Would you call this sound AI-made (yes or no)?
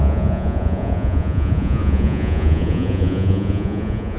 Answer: yes